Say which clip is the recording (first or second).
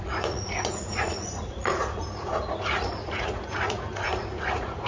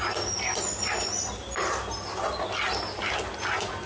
second